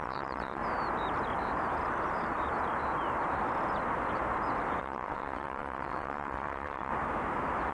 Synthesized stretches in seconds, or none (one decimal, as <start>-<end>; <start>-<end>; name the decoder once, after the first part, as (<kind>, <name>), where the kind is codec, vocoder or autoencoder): 0.0-0.6 (vocoder, WaveNeXt); 4.8-6.9